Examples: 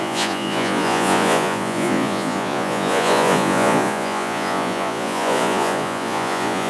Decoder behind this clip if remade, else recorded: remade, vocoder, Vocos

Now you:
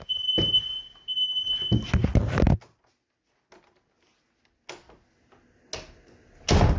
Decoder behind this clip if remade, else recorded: recorded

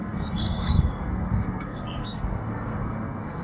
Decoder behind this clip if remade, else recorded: remade, codec, SNAC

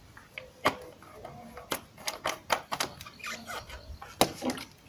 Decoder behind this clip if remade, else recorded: recorded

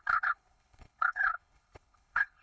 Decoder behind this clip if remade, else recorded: remade, codec, HILCodec